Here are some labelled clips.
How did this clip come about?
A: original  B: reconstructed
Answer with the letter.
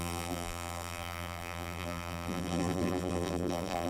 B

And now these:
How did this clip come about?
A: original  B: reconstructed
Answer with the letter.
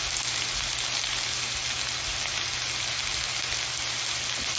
A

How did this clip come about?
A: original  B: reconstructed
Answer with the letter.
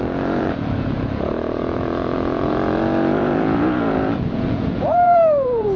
B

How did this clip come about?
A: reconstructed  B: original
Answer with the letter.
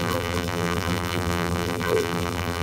A